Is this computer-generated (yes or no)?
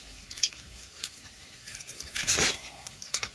yes